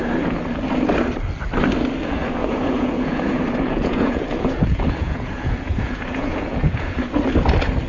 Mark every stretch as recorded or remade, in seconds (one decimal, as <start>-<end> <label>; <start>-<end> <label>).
0.0-2.4 recorded; 2.4-7.1 remade; 7.1-7.9 recorded